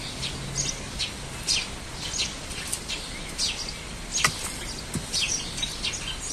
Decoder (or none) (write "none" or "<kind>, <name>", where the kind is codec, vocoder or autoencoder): none